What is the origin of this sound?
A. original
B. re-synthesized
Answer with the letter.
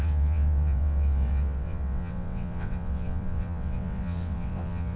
B